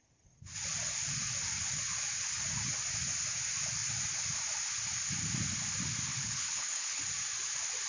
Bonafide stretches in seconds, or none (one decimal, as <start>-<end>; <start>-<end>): 0.0-6.1; 7.0-7.9